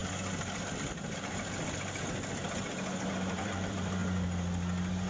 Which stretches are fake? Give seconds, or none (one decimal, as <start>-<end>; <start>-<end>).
3.1-4.0